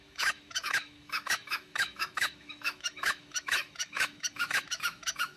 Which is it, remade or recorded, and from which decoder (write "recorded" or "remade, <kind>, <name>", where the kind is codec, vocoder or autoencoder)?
remade, autoencoder, DAC-VAE